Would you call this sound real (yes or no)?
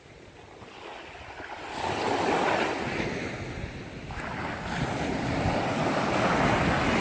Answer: yes